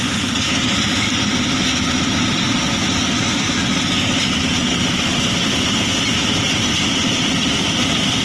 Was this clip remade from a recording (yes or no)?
no